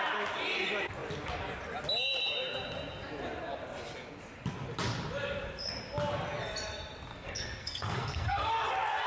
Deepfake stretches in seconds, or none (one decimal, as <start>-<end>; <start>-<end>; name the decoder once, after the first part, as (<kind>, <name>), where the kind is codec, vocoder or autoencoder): 7.1-8.5 (codec, SNAC)